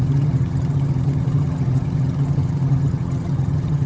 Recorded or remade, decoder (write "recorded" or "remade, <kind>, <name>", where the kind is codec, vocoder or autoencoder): remade, vocoder, HiFi-GAN